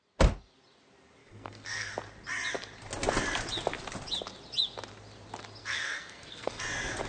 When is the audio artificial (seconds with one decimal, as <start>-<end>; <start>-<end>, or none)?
1.2-1.9; 5.6-6.6